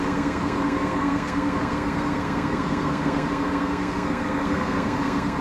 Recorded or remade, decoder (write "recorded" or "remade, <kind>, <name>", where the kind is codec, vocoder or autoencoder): remade, codec, SNAC